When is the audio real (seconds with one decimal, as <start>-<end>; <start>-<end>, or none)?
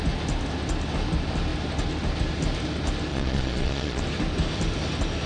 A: 0.0-3.1; 4.0-5.3